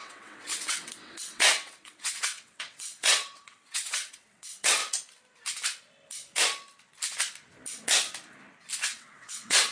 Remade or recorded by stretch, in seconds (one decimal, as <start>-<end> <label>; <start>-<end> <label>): 0.0-4.8 remade; 4.8-8.8 recorded; 8.8-9.7 remade